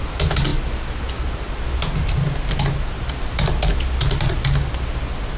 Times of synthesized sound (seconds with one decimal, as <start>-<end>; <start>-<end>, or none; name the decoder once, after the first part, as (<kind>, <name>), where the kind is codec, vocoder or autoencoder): none